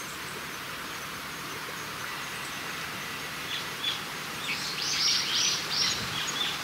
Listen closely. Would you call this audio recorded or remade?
remade